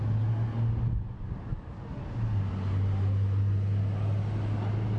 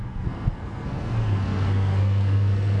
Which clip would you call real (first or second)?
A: first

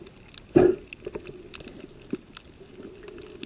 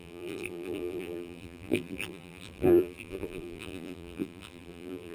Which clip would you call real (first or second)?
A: first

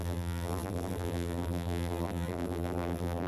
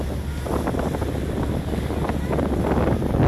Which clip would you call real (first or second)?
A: second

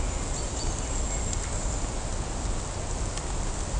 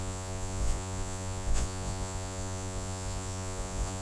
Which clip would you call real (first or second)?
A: first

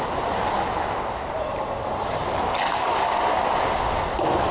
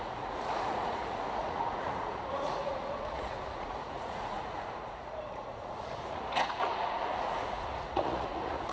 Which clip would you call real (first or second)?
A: first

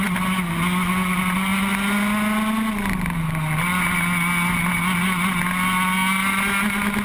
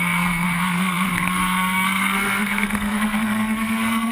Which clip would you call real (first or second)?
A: first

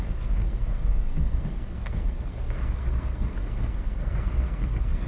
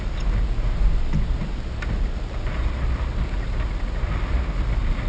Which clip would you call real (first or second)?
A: second